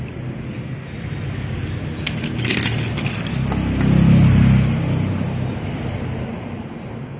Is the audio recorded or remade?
recorded